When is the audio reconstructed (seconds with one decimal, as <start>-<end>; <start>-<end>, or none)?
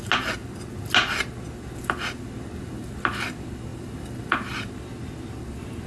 none